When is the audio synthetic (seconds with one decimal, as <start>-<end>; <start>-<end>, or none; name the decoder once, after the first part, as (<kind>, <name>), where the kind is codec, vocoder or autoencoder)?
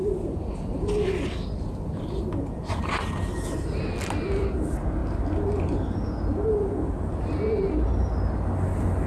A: none